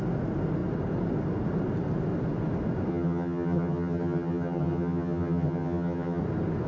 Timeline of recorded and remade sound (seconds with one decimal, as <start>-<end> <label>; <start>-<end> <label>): 0.0-2.9 recorded; 2.9-6.2 remade; 6.2-6.7 recorded